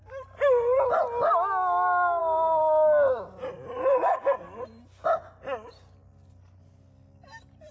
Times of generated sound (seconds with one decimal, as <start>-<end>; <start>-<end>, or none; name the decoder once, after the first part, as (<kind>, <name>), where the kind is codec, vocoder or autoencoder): none